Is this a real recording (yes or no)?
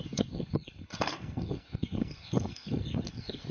no